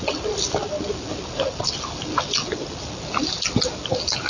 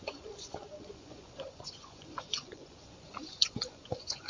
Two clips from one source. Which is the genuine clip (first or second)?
first